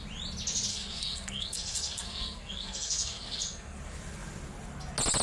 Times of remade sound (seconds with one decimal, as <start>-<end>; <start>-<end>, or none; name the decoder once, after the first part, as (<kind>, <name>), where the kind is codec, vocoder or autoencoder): 0.7-3.8 (codec, SNAC)